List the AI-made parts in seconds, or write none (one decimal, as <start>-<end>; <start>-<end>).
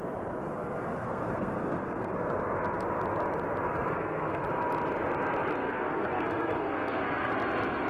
0.4-2.1; 3.7-4.4; 5.6-7.3